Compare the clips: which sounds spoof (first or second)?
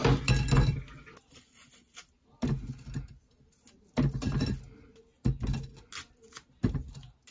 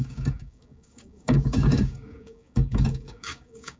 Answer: second